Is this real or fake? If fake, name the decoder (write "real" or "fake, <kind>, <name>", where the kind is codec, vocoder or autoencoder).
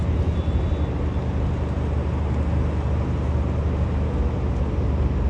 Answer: real